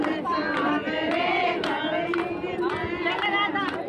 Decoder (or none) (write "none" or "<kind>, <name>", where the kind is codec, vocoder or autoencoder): none